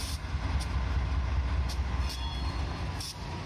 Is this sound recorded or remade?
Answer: recorded